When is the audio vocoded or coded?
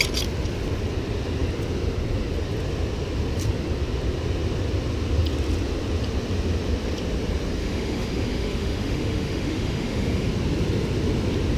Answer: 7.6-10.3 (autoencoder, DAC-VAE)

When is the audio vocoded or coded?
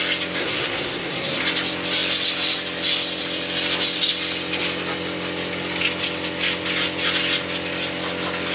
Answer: 0.4-1.4 (codec, SNAC)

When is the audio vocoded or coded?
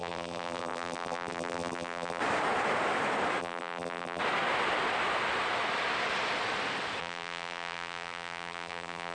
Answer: 0.0-2.2 (vocoder, BigVGAN v2); 3.4-4.2; 7.0-9.1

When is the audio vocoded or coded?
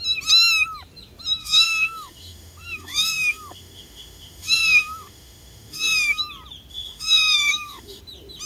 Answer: 1.4-6.2 (autoencoder, DAC-VAE); 6.7-8.0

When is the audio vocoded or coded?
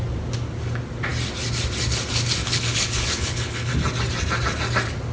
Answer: 2.4-3.7 (codec, HILCodec)